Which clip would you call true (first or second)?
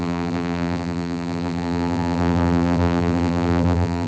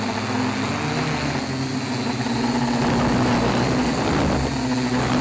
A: second